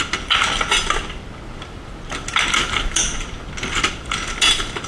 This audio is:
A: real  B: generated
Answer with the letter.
A